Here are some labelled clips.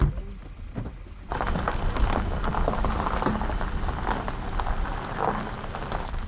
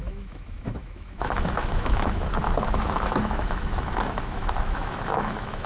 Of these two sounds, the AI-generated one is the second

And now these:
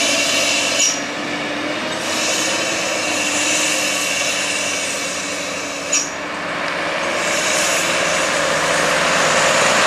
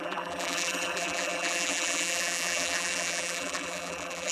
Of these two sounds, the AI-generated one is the second